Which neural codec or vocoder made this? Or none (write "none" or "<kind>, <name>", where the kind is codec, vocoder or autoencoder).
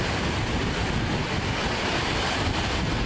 none